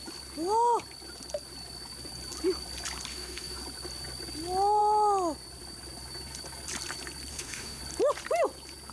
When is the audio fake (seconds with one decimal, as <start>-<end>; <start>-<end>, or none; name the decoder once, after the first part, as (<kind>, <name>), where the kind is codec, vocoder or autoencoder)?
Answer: 3.1-3.6 (autoencoder, DAC-VAE); 7.3-7.8